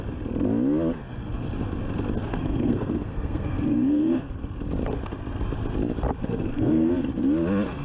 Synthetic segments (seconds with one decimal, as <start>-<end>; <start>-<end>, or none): 2.2-4.4; 6.2-6.9